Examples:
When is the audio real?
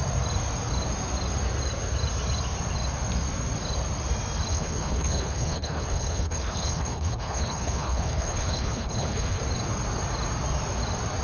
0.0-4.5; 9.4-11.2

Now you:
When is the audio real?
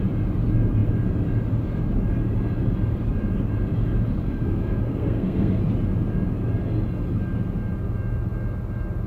0.0-4.2; 5.6-9.1